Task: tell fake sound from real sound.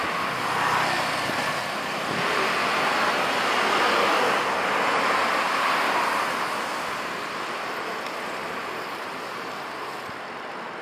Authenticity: real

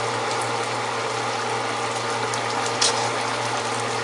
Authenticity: real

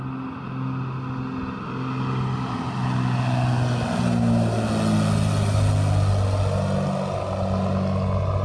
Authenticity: real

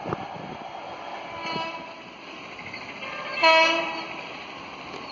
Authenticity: real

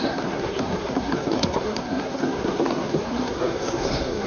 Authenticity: fake